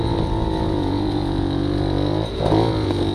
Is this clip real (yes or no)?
no